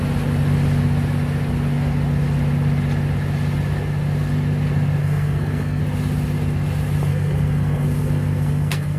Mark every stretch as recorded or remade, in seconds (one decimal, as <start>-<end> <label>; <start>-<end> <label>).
0.0-5.0 recorded; 5.0-5.8 remade; 5.8-7.1 recorded; 7.1-9.0 remade